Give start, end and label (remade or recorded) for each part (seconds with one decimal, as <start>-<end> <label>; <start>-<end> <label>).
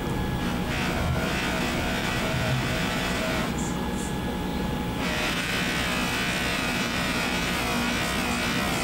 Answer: 0.0-2.0 recorded; 2.0-3.4 remade; 3.4-4.5 recorded; 4.5-5.5 remade; 5.5-6.5 recorded; 6.5-7.6 remade; 7.6-8.8 recorded